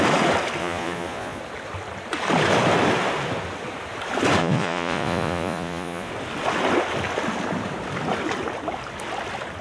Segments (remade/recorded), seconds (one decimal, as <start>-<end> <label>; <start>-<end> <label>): 0.0-0.6 recorded; 0.6-1.4 remade; 1.4-4.4 recorded; 4.4-6.1 remade; 6.1-9.6 recorded

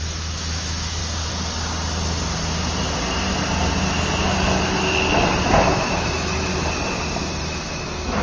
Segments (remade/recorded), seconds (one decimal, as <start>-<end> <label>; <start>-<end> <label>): 0.0-1.0 remade; 1.0-5.7 recorded; 5.7-6.5 remade; 6.5-7.4 recorded; 7.4-8.2 remade

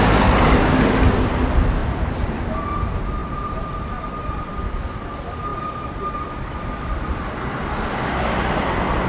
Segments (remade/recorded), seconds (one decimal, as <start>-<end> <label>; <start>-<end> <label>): 0.0-1.8 recorded; 1.8-2.5 remade; 2.5-3.2 recorded; 3.2-4.1 remade; 4.1-5.5 recorded; 5.5-7.7 remade; 7.7-9.1 recorded

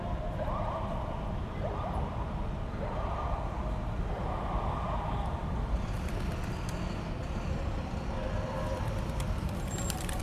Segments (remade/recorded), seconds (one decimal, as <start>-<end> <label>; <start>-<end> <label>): 0.0-5.4 recorded; 5.4-10.2 remade

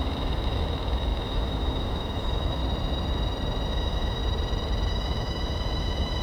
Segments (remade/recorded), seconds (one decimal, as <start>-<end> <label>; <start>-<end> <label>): 0.0-2.6 remade; 2.6-3.7 recorded; 3.7-4.2 remade; 4.2-4.9 recorded; 4.9-6.2 remade

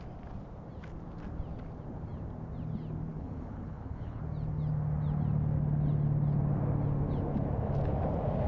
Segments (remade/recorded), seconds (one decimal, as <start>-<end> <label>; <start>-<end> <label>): 0.0-3.1 recorded; 3.1-4.2 remade; 4.2-8.5 recorded

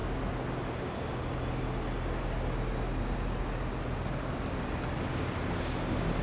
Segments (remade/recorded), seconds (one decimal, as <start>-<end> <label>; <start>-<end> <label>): 0.0-6.2 recorded

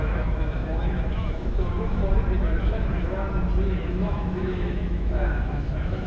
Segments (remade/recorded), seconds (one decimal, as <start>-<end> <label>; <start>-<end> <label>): 0.0-2.0 remade; 2.0-2.6 recorded; 2.6-3.2 remade; 3.2-3.9 recorded; 3.9-6.1 remade